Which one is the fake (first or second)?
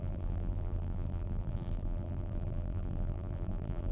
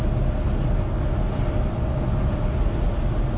first